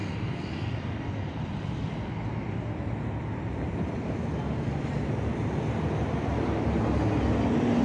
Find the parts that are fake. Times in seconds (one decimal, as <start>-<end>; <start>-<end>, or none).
none